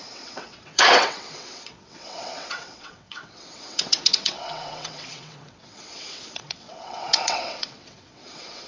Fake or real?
fake